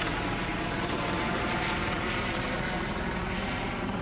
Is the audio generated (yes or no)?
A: no